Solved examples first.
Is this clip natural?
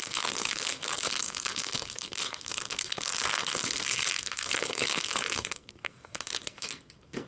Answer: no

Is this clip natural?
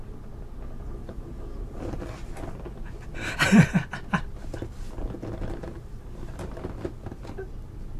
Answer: yes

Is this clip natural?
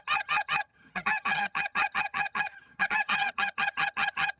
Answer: no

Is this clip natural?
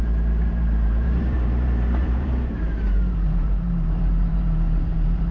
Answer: no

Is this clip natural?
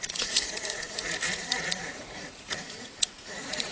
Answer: no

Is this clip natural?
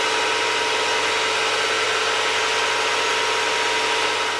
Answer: yes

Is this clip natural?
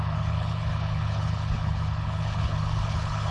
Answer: no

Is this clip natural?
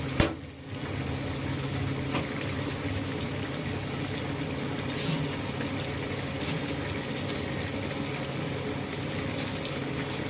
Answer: yes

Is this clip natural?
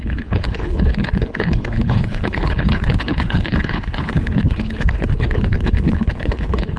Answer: no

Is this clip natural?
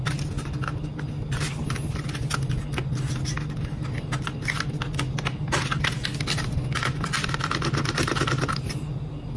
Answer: yes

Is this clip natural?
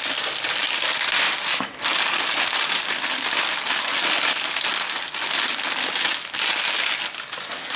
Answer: yes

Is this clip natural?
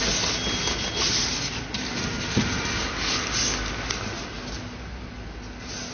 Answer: yes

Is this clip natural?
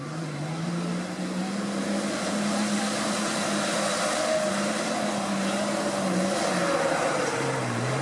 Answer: no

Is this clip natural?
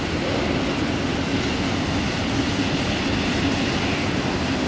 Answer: yes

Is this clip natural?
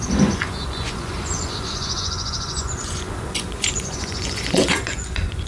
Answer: no